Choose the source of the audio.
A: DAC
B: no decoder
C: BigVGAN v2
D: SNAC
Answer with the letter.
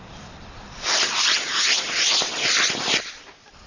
B